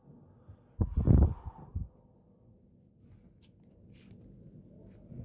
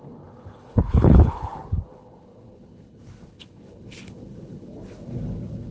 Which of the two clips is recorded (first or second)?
first